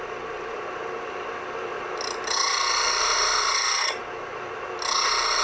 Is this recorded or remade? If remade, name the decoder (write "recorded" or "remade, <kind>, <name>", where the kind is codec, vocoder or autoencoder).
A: recorded